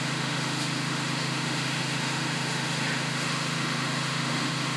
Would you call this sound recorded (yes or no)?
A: no